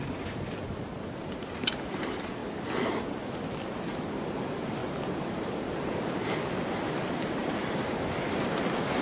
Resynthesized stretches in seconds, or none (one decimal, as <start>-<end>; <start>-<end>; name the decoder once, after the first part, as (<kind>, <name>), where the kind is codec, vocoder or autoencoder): none